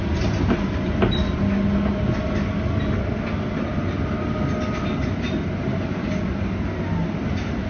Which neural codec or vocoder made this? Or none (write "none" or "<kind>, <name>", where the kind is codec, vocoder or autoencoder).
none